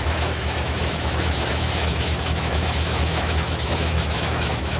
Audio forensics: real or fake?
fake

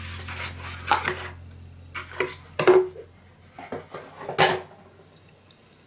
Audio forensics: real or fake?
real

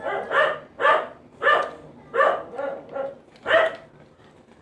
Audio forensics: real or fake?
real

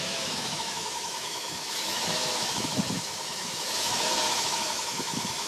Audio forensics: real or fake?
fake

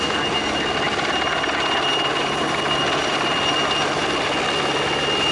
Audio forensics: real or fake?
real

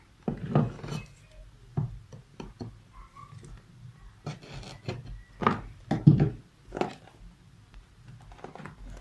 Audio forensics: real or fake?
real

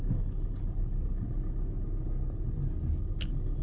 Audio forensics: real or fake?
real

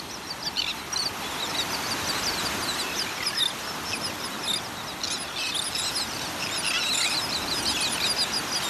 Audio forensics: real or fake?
real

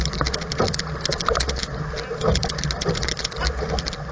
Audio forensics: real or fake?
real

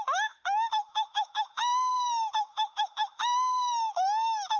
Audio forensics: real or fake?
fake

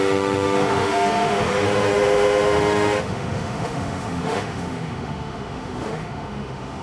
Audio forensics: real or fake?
fake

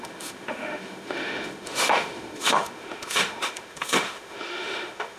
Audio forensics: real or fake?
fake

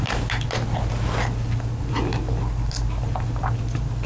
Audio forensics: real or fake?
real